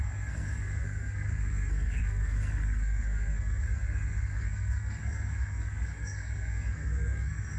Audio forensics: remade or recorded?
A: remade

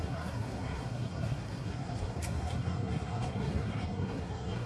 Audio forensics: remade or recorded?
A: remade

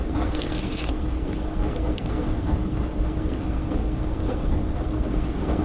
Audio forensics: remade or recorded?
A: remade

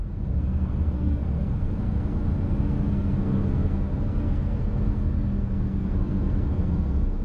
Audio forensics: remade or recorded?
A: remade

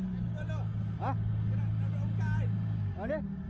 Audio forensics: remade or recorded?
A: recorded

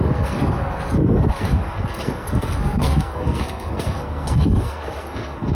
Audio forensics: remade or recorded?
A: remade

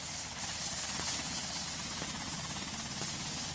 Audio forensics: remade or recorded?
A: recorded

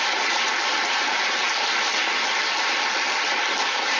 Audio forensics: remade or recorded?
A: recorded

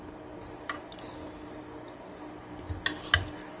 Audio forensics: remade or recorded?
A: recorded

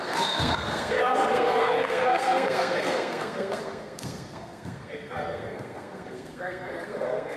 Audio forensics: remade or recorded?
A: remade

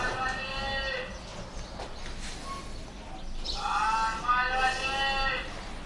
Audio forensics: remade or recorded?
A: recorded